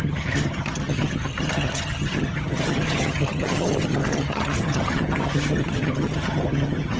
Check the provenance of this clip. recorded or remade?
remade